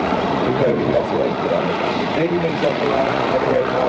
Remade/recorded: remade